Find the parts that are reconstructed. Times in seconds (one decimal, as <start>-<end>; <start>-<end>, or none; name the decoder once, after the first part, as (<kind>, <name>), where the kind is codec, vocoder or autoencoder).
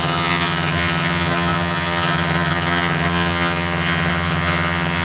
0.0-5.0 (vocoder, HiFi-GAN)